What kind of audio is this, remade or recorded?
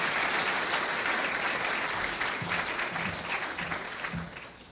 recorded